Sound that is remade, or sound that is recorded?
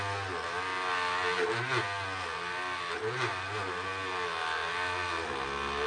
recorded